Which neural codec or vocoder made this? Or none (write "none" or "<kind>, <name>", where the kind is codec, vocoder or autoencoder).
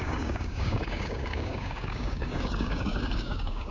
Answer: codec, DAC